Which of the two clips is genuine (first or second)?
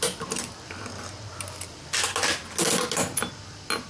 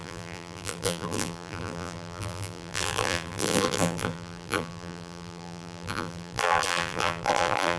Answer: first